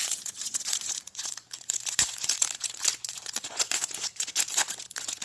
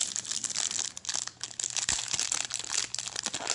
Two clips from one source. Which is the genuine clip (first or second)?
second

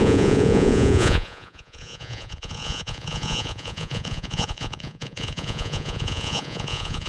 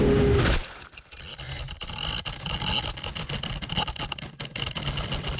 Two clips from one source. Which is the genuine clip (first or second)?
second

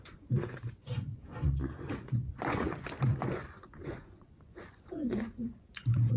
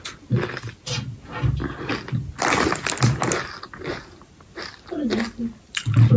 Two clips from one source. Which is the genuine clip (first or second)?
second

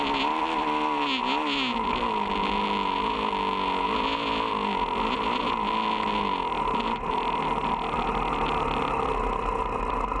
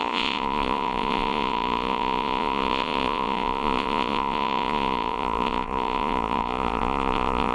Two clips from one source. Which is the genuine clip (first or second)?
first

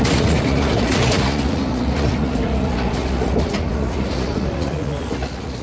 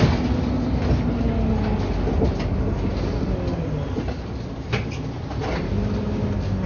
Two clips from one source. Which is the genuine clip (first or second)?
second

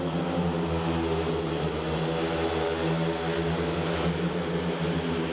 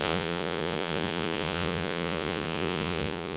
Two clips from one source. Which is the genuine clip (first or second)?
first